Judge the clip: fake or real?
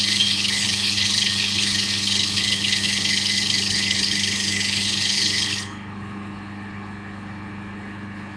fake